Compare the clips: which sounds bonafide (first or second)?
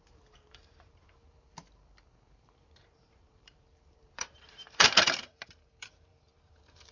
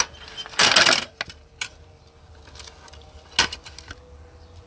second